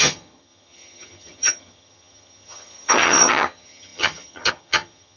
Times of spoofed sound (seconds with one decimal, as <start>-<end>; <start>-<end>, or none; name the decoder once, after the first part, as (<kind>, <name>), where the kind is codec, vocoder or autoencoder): 0.0-5.2 (vocoder, HiFi-GAN)